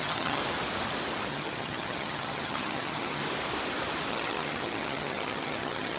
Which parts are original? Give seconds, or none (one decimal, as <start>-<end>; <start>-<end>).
0.4-1.3; 3.2-4.1